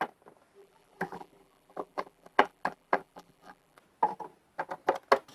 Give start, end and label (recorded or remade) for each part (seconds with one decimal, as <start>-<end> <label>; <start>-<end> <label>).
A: 0.0-0.6 recorded; 0.6-3.8 remade; 3.8-5.3 recorded